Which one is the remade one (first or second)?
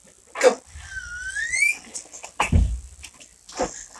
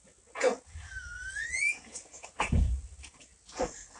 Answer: second